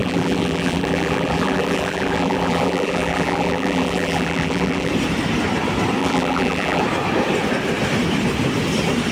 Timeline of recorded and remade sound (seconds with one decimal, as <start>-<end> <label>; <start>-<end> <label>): 0.0-4.9 remade; 4.9-6.0 recorded; 6.0-6.8 remade; 6.8-9.1 recorded